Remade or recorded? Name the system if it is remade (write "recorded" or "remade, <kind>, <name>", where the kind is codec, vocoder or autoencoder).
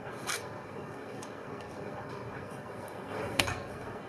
remade, codec, SNAC